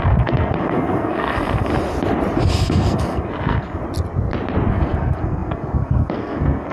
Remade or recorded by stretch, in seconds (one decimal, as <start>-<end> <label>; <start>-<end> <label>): 0.0-1.7 remade; 1.7-2.5 recorded; 2.5-3.8 remade; 3.8-4.7 recorded; 4.7-6.7 remade